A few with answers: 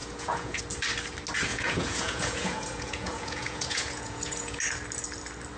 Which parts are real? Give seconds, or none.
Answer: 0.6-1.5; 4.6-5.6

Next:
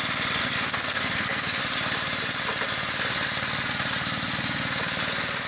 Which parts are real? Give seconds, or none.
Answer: 0.0-0.4; 1.6-5.5

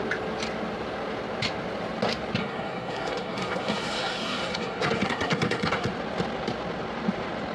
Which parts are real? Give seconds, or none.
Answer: 0.0-2.4; 5.9-7.5

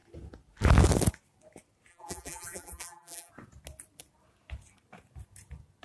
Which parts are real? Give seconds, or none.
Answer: 0.0-1.9; 3.3-5.8

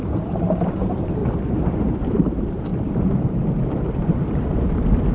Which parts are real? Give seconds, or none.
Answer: 1.2-1.8; 2.7-3.9